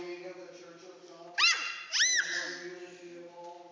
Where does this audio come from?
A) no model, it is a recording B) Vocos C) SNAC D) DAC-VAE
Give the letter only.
A